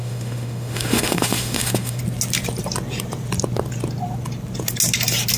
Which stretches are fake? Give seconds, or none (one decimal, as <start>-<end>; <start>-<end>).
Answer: 0.0-2.0